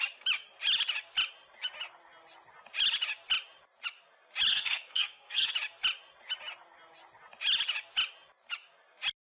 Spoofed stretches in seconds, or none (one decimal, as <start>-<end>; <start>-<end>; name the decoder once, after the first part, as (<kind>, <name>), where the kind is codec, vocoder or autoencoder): 4.5-5.5 (codec, SNAC)